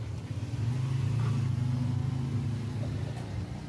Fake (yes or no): no